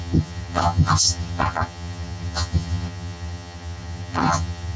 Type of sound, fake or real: fake